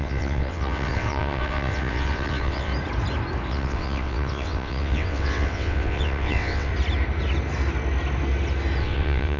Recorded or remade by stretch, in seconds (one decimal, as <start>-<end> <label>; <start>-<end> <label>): 0.0-2.7 remade; 2.7-3.5 recorded; 3.5-6.7 remade; 6.7-8.8 recorded; 8.8-9.4 remade